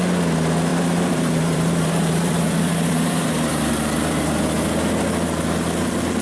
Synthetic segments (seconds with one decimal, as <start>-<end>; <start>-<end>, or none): 0.7-4.4